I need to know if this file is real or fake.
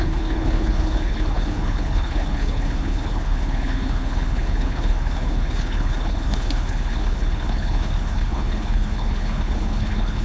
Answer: fake